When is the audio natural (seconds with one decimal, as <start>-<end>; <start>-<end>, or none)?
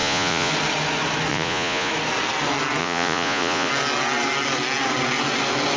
0.5-1.3; 1.9-2.8; 3.7-5.8